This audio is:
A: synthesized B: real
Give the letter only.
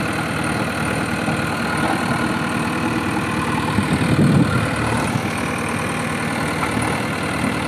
B